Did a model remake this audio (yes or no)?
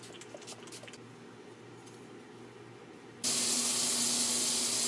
no